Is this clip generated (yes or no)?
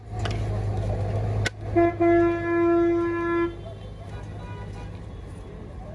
no